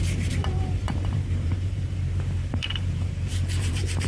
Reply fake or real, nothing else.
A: fake